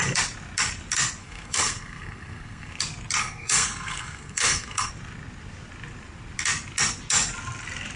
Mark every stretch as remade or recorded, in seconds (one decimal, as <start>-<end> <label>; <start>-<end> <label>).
0.0-1.2 recorded; 1.2-2.8 remade; 2.8-3.2 recorded; 3.2-4.9 remade; 4.9-8.0 recorded